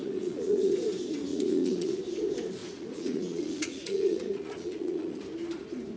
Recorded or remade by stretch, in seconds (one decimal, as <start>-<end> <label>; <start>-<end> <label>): 0.0-0.7 remade; 0.7-1.3 recorded; 1.3-2.0 remade; 2.0-2.6 recorded; 2.6-5.2 remade; 5.2-6.0 recorded